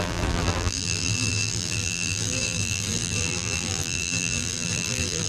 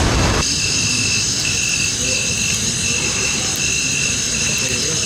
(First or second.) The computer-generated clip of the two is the first